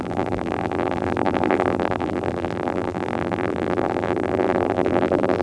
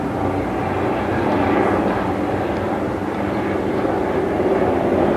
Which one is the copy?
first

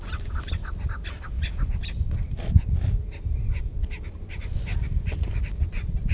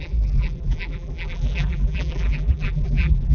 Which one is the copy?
second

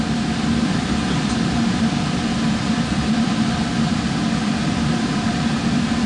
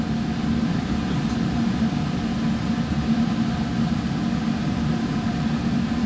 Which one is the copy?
first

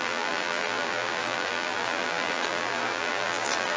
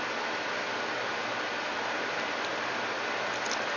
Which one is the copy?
first